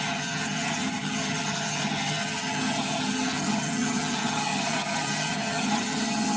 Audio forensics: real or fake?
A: fake